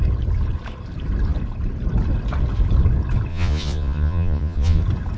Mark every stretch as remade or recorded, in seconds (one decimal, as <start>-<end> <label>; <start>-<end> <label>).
0.0-3.3 recorded; 3.3-4.8 remade; 4.8-5.2 recorded